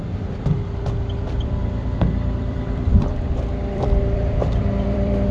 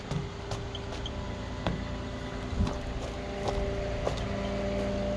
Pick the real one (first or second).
second